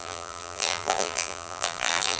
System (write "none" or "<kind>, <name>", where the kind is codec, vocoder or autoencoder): vocoder, BigVGAN v2